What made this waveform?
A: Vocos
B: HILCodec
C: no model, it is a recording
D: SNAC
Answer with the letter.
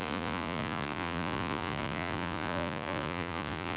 A